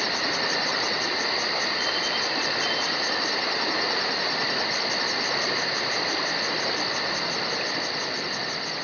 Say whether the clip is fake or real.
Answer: real